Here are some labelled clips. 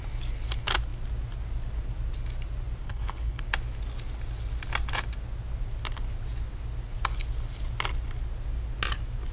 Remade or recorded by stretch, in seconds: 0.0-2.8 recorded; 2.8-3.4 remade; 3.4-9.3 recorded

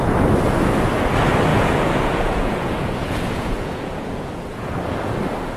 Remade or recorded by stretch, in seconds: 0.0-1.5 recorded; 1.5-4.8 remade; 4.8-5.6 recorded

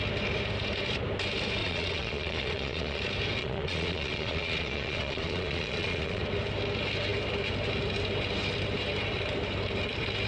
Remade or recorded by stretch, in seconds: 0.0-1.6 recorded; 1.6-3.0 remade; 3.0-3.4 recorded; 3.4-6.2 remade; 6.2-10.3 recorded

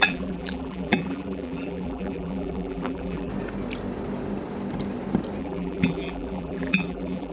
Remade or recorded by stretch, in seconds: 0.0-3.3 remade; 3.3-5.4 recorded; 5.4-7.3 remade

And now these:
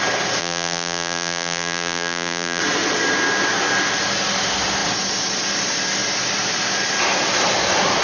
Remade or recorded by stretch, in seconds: 0.0-0.4 recorded; 0.4-2.6 remade; 2.6-8.0 recorded